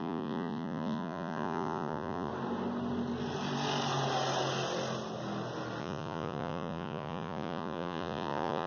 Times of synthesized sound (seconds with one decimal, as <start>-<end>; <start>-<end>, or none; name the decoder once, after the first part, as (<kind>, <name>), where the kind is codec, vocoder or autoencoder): 0.0-2.3 (vocoder, Vocos); 5.8-8.7